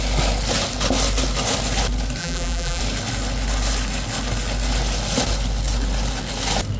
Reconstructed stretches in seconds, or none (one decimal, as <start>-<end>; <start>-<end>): 2.2-2.8